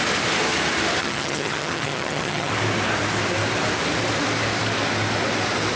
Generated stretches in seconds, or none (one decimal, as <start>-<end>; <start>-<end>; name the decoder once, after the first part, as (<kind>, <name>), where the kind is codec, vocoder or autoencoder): 1.0-2.5 (vocoder, HiFi-GAN)